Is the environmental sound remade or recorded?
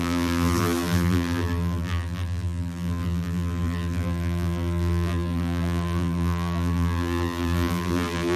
remade